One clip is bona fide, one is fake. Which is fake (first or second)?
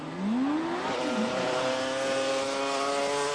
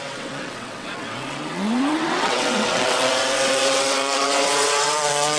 second